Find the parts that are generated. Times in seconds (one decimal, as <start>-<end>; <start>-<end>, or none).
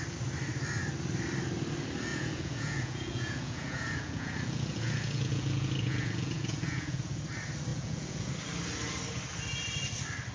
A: 2.1-7.2; 7.7-8.3